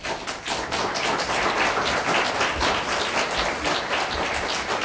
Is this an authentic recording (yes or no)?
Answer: yes